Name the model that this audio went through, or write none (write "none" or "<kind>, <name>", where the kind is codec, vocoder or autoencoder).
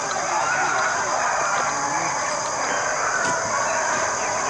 none